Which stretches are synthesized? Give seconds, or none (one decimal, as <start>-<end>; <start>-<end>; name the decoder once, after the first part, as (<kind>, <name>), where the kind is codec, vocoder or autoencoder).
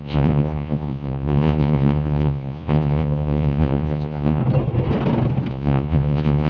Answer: 0.0-4.4 (vocoder, Vocos); 5.5-6.5